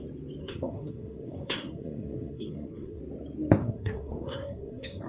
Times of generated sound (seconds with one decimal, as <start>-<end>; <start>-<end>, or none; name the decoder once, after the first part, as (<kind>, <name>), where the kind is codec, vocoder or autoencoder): 0.4-3.0 (codec, SNAC); 3.6-5.1